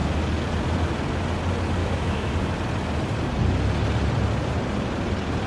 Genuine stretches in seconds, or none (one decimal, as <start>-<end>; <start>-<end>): 0.0-1.8; 2.3-5.5